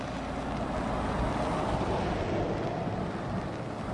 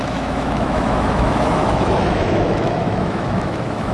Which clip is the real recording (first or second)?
first